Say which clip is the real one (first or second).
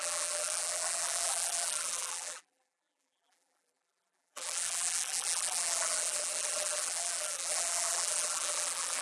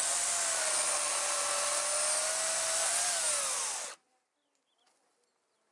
second